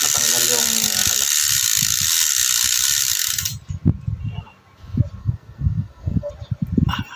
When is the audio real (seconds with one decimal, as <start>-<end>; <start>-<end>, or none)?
0.0-5.2; 6.3-7.2

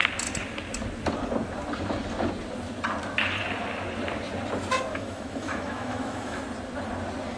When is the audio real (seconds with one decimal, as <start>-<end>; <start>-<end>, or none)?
0.0-4.9; 6.4-7.4

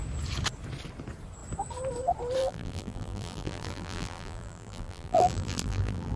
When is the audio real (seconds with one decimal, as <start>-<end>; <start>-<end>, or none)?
0.0-2.4

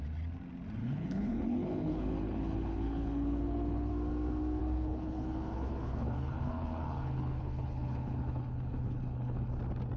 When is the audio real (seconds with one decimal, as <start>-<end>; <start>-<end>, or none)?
0.0-0.8; 3.9-4.6; 9.5-10.0

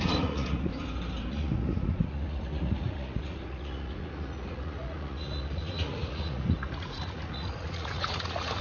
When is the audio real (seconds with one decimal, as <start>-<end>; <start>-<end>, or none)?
0.7-1.3